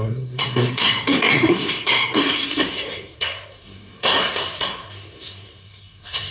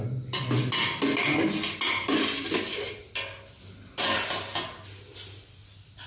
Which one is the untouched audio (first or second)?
second